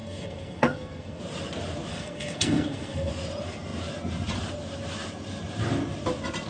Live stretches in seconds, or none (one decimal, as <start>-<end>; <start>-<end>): 1.2-1.9; 3.1-6.5